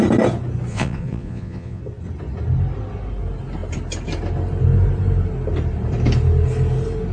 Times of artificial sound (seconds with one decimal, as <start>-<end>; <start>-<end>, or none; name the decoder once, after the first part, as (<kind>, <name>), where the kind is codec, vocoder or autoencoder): 0.7-1.8 (vocoder, Vocos)